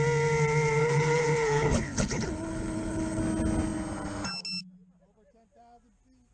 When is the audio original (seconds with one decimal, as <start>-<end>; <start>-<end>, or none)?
0.0-0.8; 3.2-6.3